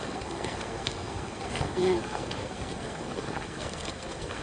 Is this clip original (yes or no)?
no